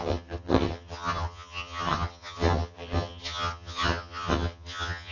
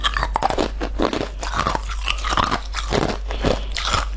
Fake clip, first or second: first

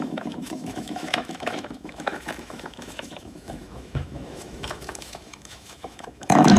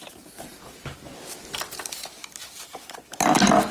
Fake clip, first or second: first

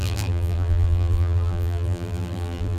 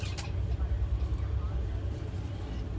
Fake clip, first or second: first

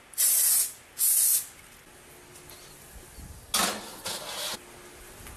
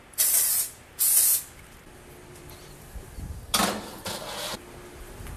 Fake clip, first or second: second